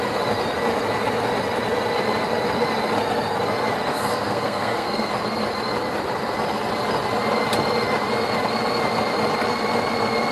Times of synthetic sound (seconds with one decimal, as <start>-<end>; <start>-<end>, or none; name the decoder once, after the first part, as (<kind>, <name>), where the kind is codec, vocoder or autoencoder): 3.9-5.1 (codec, SNAC)